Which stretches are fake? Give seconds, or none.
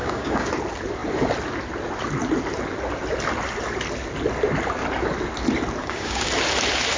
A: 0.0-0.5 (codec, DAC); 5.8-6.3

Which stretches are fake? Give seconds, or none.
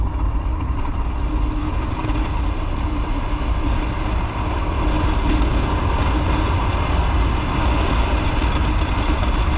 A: none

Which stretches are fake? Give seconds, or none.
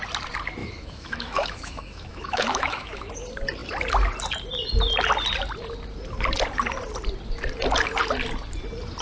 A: 0.6-3.1 (autoencoder, DAC-VAE)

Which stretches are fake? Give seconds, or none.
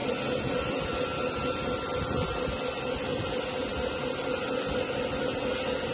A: none